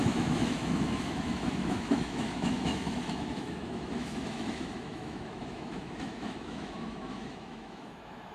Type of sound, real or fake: fake